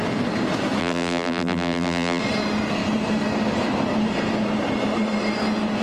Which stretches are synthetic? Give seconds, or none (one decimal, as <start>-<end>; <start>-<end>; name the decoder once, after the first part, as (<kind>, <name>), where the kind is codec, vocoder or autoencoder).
0.8-2.2 (vocoder, BigVGAN v2)